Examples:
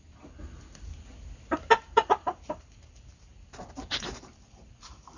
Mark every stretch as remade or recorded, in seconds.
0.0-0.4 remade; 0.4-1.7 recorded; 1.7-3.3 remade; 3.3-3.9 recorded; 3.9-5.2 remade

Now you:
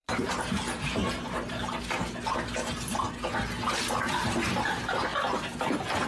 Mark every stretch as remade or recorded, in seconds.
0.0-1.0 remade; 1.0-3.9 recorded; 3.9-5.1 remade; 5.1-6.1 recorded

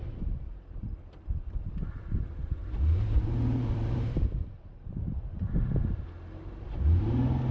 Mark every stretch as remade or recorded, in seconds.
0.0-1.7 remade; 1.7-2.6 recorded; 2.6-5.6 remade; 5.6-7.5 recorded

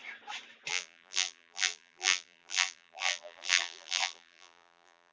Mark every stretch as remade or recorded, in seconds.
0.0-0.7 recorded; 0.7-5.1 remade